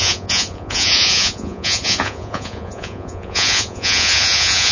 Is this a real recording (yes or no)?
no